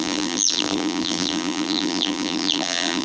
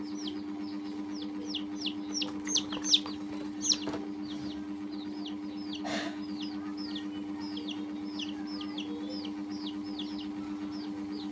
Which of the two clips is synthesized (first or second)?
first